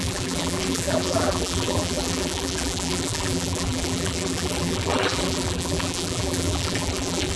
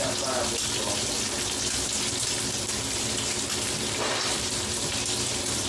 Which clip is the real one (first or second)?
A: second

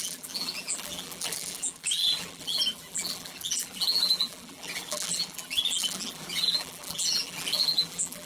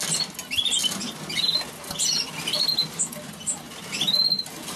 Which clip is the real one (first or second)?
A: second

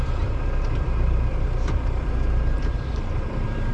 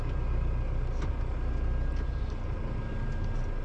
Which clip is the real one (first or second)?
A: second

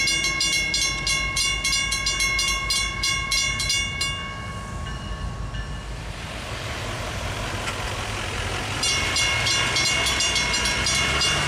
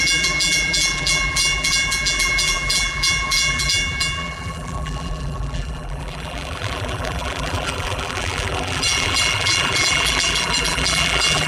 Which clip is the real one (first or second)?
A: first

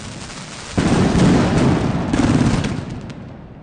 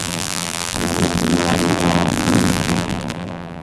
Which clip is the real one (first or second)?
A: first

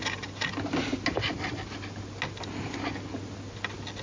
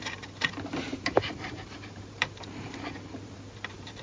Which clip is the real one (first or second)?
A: first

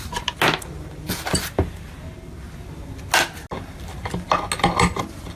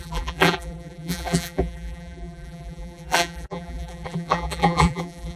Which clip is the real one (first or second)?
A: first